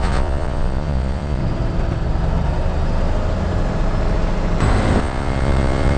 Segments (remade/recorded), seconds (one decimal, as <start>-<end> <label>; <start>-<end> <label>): 0.0-1.4 remade; 1.4-5.0 recorded; 5.0-6.0 remade